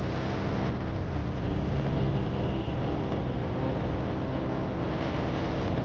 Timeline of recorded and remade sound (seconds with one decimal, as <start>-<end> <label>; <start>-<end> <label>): 0.0-5.8 recorded